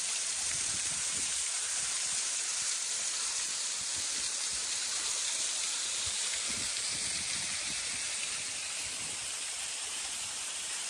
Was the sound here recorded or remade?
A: remade